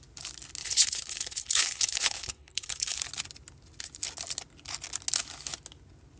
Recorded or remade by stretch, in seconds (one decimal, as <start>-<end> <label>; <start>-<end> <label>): 0.0-0.6 recorded; 0.6-3.0 remade; 3.0-6.2 recorded